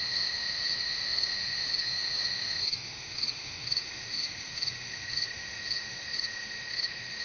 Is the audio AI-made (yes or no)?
yes